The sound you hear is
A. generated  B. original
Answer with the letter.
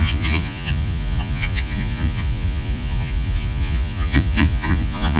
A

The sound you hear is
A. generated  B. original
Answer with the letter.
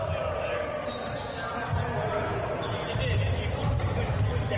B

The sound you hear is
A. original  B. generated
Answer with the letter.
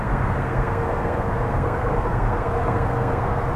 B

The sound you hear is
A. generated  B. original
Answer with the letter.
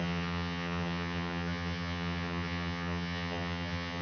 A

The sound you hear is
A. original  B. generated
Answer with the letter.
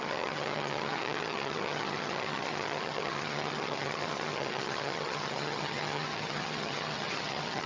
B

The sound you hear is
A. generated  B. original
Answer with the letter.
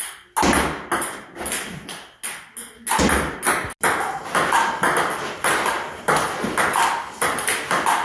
B